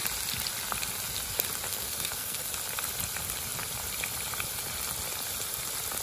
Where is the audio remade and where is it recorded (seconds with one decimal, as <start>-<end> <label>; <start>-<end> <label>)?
0.0-1.7 recorded; 1.7-2.5 remade; 2.5-6.0 recorded

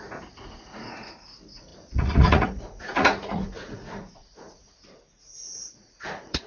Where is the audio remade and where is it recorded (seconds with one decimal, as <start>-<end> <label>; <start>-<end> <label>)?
0.0-6.5 remade

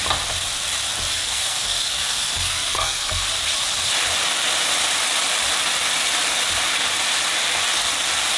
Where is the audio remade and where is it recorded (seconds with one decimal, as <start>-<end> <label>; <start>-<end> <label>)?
0.0-1.1 recorded; 1.1-3.3 remade; 3.3-8.4 recorded

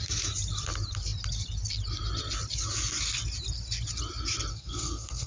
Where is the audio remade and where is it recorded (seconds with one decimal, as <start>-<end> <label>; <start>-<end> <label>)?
0.0-4.5 recorded; 4.5-5.3 remade

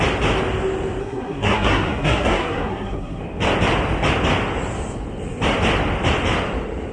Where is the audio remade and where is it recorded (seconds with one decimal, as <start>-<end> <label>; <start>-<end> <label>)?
0.0-1.0 recorded; 1.0-3.2 remade; 3.2-6.9 recorded

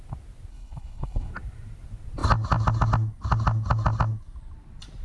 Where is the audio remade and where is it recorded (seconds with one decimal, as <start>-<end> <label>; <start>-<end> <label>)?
0.0-0.5 recorded; 0.5-1.3 remade; 1.3-5.0 recorded